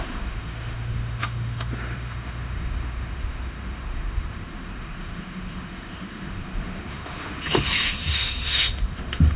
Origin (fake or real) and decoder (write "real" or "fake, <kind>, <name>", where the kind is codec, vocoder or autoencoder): fake, autoencoder, DAC-VAE